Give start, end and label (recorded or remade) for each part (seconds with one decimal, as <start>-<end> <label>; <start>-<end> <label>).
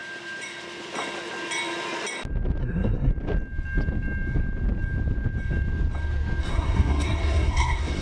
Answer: 0.0-2.6 recorded; 2.6-3.1 remade; 3.1-6.4 recorded; 6.4-8.0 remade